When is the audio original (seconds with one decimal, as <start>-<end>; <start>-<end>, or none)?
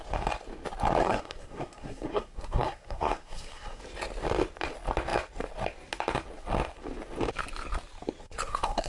0.0-1.0; 3.8-8.2